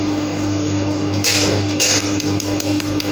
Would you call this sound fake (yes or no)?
yes